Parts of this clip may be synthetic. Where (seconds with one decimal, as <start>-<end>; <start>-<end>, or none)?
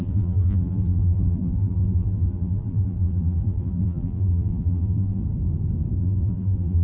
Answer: 0.0-5.2; 6.0-6.8